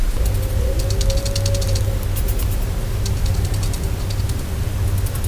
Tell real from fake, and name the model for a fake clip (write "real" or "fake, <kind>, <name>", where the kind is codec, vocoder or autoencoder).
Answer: real